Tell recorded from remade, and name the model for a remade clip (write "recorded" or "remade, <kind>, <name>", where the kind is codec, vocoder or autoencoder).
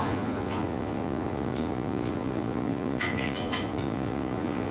remade, vocoder, Vocos